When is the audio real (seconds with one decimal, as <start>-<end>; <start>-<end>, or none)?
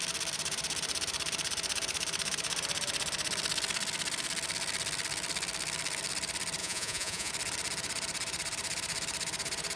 0.0-6.6; 7.3-9.8